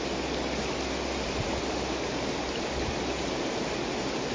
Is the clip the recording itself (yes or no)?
yes